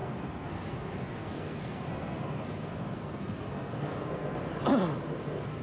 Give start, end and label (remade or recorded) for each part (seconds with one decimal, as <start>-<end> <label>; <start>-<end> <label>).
0.0-4.4 remade; 4.4-5.1 recorded; 5.1-5.6 remade